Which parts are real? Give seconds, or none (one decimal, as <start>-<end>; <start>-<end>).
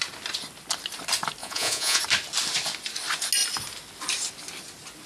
0.0-1.4; 2.0-5.1